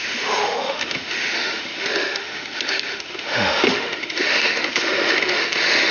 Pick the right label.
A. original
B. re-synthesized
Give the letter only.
B